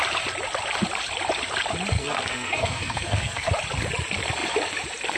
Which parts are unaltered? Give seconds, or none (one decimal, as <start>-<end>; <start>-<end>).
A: 0.0-2.0; 3.5-5.2

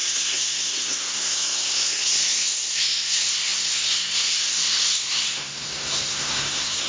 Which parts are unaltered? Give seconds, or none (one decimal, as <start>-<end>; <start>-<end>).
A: none

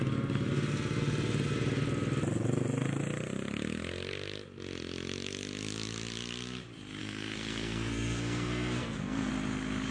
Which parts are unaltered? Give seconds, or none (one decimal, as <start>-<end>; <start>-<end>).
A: 0.0-7.0; 9.3-9.9